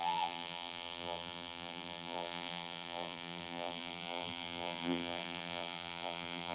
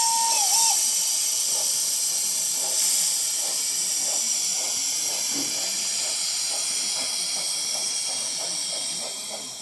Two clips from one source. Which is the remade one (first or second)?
first